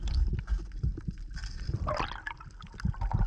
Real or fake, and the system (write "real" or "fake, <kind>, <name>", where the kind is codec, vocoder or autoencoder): real